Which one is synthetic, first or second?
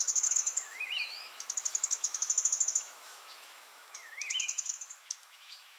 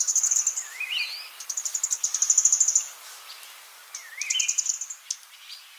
first